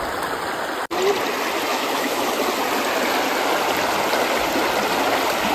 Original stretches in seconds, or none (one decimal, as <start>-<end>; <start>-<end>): 0.0-1.7; 2.3-5.5